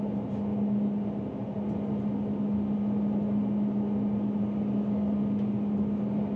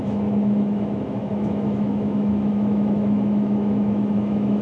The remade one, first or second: second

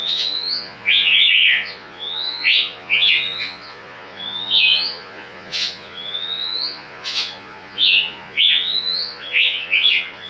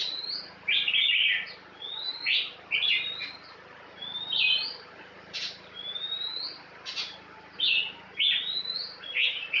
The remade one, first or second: first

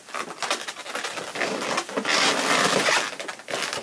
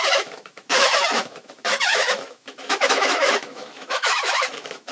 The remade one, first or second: second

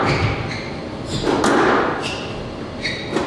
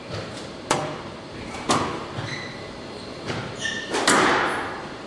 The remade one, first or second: second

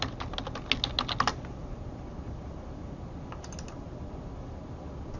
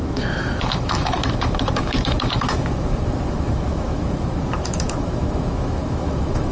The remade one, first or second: second